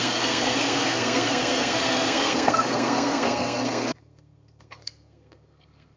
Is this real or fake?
fake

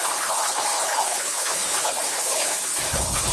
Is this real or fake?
fake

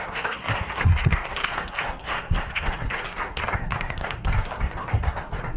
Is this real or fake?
fake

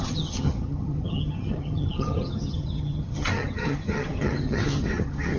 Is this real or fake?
fake